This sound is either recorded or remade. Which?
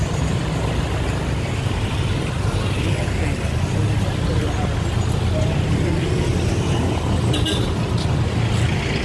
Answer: recorded